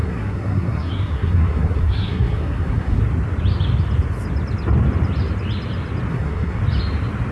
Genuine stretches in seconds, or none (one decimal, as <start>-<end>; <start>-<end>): 3.0-6.1; 6.6-7.3